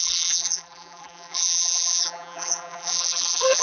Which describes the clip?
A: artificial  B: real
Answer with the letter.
A